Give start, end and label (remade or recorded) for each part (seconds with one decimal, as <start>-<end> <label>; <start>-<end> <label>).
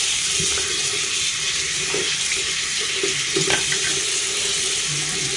0.0-3.1 remade; 3.1-4.2 recorded; 4.2-5.4 remade